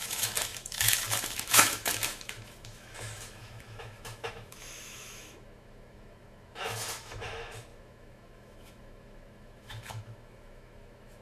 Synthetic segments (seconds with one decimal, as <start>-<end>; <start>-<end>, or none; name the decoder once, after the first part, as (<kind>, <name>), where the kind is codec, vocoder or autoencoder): 0.0-11.2 (autoencoder, DAC-VAE)

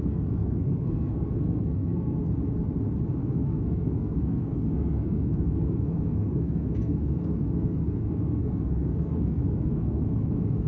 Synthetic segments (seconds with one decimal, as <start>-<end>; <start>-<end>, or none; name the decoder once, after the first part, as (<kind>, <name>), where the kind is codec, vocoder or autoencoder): 0.0-2.2 (codec, SNAC); 3.2-10.7